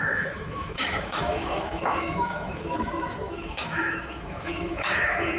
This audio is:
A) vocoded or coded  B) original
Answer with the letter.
A